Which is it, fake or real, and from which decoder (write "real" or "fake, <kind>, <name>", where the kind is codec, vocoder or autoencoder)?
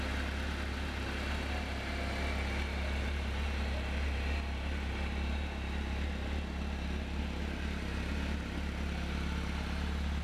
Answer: real